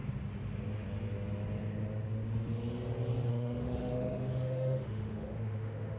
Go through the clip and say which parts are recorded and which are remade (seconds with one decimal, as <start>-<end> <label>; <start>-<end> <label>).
0.0-3.3 recorded; 3.3-6.0 remade